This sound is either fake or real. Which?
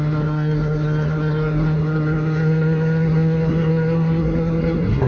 fake